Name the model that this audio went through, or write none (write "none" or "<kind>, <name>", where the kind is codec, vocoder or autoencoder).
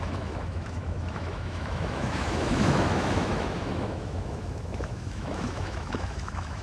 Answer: autoencoder, DAC-VAE